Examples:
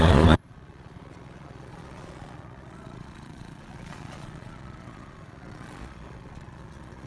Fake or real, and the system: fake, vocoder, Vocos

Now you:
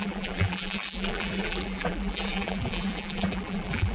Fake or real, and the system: fake, vocoder, BigVGAN v2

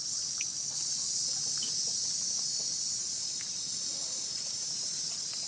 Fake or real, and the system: real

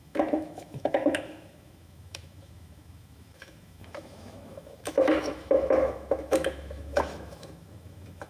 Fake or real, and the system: fake, autoencoder, DAC-VAE